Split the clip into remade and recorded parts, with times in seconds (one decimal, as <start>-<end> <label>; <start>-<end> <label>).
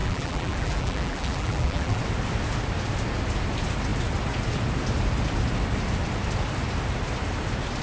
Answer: 0.0-2.0 remade; 2.0-7.8 recorded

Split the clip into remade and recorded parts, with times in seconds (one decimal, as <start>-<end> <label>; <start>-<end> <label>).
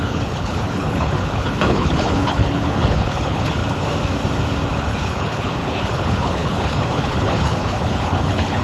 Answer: 0.0-3.6 remade; 3.6-4.7 recorded; 4.7-8.6 remade